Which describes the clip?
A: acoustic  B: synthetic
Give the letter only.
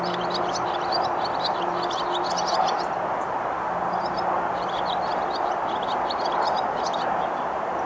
A